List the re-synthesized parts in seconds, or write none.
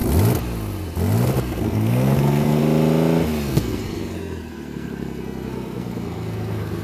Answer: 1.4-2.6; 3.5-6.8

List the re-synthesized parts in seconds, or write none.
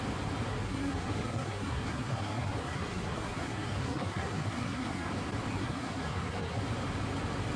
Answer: 0.5-5.1; 5.5-6.6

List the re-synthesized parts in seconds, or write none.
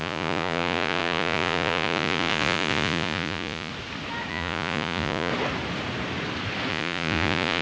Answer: 0.0-3.7; 4.3-5.3; 6.7-7.6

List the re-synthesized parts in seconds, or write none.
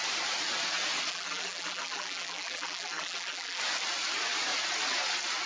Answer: 1.1-3.6